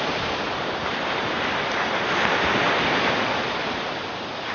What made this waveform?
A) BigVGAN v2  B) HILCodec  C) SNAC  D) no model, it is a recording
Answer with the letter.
A